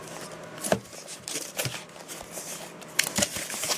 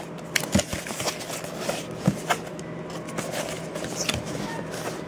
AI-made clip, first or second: first